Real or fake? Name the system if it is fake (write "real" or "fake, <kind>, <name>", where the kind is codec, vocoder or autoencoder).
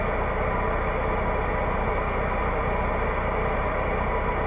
real